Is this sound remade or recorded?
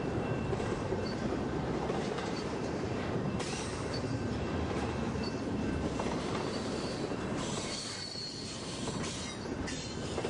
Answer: remade